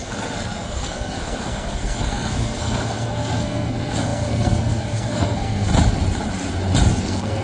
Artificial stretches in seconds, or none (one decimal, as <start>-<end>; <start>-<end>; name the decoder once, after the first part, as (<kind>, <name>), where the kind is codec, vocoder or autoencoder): 0.0-5.7 (codec, SNAC); 7.0-7.4